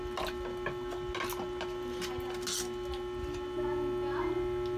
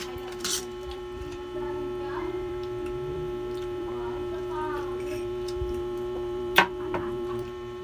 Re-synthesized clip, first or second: second